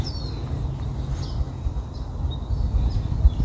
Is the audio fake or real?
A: real